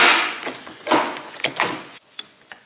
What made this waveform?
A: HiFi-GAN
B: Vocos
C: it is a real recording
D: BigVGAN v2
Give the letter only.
B